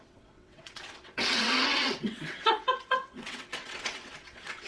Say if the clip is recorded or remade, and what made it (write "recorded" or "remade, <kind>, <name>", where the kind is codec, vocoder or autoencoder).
remade, vocoder, WaveNeXt